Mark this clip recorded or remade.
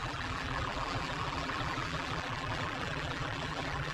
remade